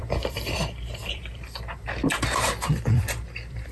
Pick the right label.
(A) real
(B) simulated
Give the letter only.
B